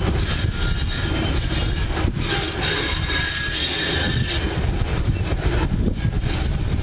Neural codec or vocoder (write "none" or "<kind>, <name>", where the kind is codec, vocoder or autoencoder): none